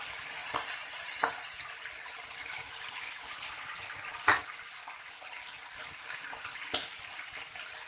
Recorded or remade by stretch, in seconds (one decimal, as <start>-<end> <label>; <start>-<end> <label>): 0.0-7.9 recorded